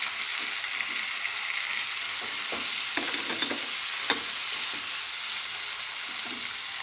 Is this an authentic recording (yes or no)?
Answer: yes